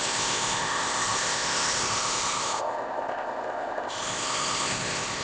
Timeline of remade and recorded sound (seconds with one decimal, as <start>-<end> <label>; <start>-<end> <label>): 0.0-5.2 remade

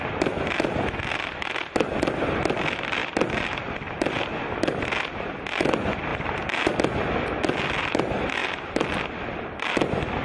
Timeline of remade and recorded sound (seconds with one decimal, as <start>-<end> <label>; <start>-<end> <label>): 0.0-3.0 recorded; 3.0-4.3 remade; 4.3-8.4 recorded; 8.4-9.6 remade; 9.6-10.2 recorded

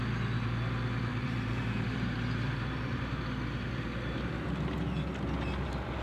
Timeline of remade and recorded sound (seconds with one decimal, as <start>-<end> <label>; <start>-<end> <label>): 0.0-1.1 recorded; 1.1-3.2 remade; 3.2-6.0 recorded

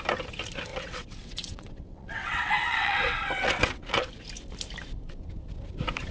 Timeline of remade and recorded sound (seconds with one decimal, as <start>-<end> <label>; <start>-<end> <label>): 0.0-0.7 recorded; 0.7-4.0 remade; 4.0-6.1 recorded

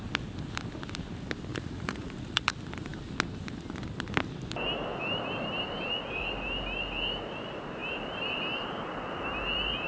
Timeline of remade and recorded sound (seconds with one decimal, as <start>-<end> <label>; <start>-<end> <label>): 0.0-1.5 recorded; 1.5-2.5 remade; 2.5-9.9 recorded

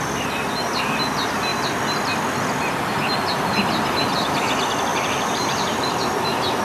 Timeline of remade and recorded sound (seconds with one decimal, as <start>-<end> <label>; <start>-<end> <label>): 0.0-4.9 recorded; 4.9-5.9 remade; 5.9-6.6 recorded

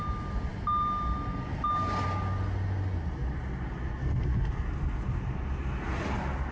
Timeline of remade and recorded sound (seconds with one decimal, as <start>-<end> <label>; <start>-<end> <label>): 0.0-4.0 recorded; 4.0-4.5 remade; 4.5-6.5 recorded